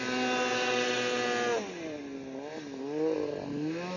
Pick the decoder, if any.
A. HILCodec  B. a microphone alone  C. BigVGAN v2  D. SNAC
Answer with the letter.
B